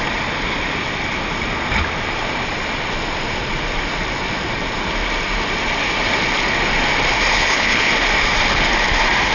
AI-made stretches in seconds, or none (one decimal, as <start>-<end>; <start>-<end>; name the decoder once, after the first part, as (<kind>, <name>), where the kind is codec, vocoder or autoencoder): 7.3-7.9 (codec, HILCodec)